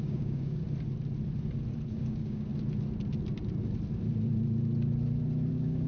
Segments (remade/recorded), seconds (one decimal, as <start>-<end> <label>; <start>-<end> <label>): 0.0-0.6 remade; 0.6-1.9 recorded; 1.9-2.5 remade; 2.5-5.5 recorded; 5.5-5.9 remade